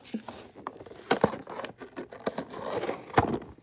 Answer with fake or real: real